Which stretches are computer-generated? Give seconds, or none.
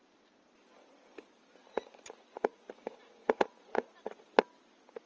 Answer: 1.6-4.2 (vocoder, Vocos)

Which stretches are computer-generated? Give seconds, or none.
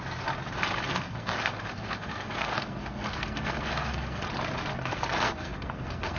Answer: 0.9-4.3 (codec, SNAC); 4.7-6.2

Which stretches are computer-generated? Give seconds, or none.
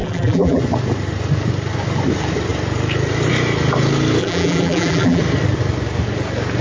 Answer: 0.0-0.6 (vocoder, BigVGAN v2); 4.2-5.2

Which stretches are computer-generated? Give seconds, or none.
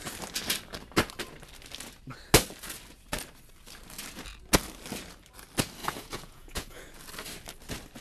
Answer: 5.8-6.9 (vocoder, Vocos)